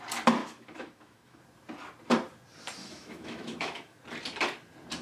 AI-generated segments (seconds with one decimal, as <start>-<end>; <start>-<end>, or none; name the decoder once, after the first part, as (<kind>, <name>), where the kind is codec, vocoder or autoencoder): 0.4-1.4 (autoencoder, DAC-VAE); 2.8-4.0

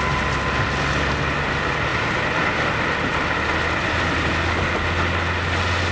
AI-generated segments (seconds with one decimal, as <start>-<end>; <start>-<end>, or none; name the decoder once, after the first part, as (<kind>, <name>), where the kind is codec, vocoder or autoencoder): 1.9-4.3 (vocoder, BigVGAN v2)

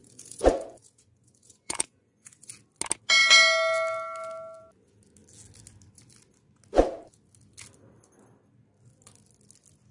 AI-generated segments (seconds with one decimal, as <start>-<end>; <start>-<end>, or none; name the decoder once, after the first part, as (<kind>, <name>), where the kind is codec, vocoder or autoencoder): 0.0-2.5 (vocoder, Vocos)

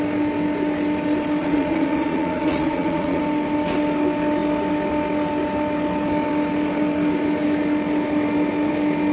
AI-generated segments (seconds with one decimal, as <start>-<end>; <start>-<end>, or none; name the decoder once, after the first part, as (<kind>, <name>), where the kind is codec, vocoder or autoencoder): 1.4-3.2 (vocoder, Vocos)

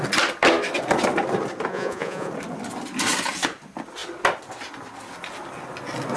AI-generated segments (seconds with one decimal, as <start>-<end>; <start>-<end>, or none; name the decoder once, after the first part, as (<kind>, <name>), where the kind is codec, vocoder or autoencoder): 1.7-2.3 (vocoder, Vocos)

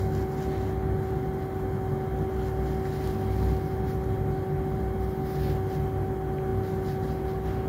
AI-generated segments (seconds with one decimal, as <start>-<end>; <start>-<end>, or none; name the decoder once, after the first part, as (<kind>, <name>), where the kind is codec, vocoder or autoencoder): none